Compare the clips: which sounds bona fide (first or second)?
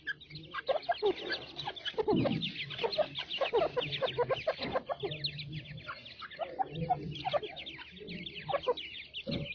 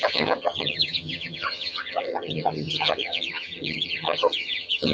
first